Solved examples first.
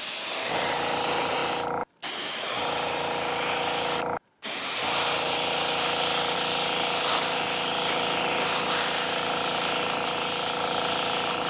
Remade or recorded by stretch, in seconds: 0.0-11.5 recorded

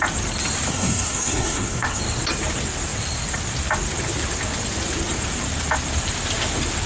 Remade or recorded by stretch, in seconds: 0.0-0.7 recorded; 0.7-2.0 remade; 2.0-6.9 recorded